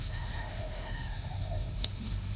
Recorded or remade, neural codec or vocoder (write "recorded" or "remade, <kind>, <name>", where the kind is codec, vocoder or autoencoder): remade, autoencoder, DAC-VAE